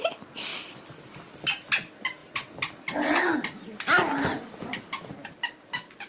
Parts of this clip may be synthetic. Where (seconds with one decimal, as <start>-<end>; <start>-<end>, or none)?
none